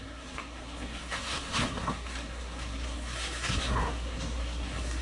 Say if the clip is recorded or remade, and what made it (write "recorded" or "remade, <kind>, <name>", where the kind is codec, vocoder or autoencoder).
remade, codec, SNAC